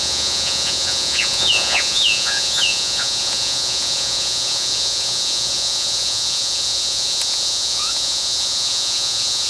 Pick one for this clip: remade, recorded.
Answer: remade